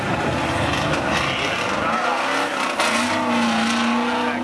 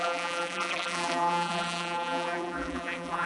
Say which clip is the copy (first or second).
second